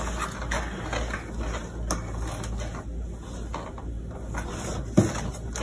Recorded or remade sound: recorded